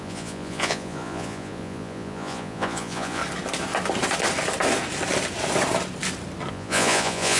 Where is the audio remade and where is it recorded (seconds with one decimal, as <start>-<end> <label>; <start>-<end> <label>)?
0.0-3.2 remade; 3.2-6.5 recorded; 6.5-7.4 remade